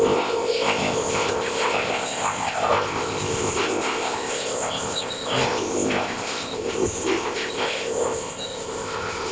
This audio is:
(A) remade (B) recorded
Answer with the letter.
A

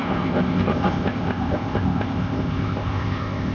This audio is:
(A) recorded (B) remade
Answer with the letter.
B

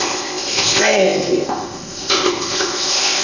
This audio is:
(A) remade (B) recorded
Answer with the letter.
A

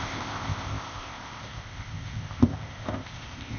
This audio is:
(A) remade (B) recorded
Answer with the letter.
A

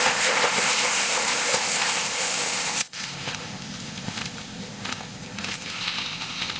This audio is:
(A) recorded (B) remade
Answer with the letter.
B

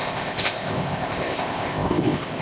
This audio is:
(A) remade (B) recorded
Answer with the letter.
A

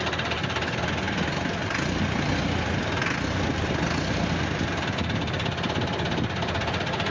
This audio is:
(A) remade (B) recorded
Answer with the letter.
B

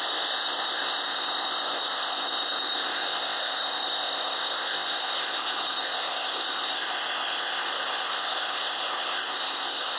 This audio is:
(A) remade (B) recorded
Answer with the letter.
A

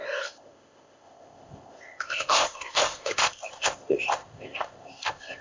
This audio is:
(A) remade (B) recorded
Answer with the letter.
A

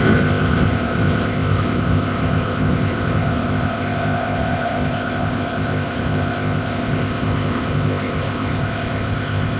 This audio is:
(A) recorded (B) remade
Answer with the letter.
B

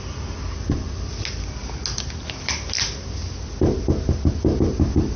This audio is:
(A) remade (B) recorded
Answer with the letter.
B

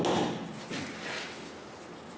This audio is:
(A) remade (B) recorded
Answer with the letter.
B